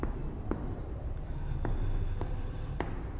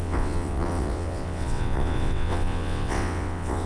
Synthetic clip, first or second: second